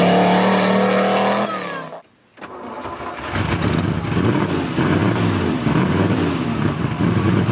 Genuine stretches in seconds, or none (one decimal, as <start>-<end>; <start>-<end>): 0.0-7.5